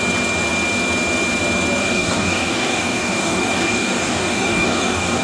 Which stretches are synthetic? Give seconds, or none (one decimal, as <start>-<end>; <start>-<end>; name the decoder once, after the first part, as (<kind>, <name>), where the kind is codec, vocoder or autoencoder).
1.8-5.2 (codec, DAC)